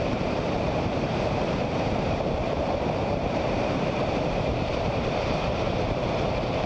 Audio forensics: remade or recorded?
remade